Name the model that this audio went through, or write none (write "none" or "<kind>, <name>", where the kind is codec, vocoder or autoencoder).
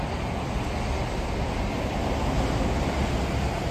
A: none